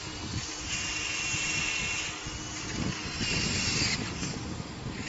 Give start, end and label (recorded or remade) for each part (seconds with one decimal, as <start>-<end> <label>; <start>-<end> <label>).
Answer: 0.0-5.1 recorded